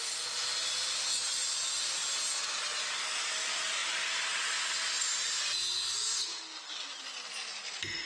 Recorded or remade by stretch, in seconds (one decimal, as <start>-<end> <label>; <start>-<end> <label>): 0.0-8.1 recorded